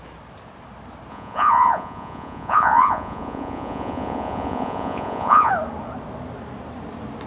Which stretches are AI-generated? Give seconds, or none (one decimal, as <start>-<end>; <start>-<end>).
1.1-5.5